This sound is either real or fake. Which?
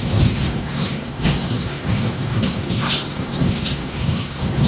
fake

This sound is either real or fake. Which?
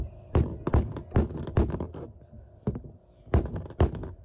real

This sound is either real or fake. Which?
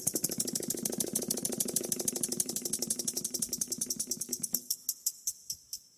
real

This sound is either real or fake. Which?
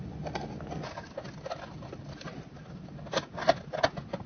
real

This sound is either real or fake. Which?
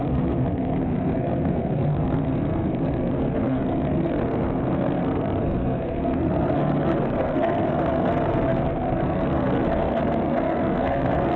fake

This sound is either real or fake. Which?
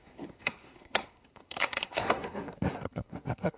fake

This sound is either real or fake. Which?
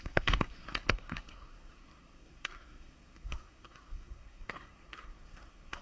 fake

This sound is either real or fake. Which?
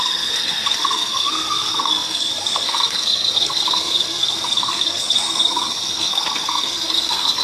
fake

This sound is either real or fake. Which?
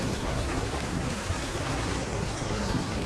fake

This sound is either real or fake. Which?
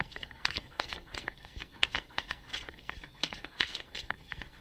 fake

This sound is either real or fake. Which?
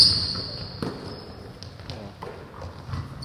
real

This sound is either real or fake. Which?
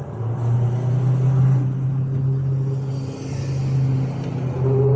real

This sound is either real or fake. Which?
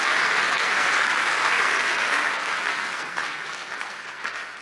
fake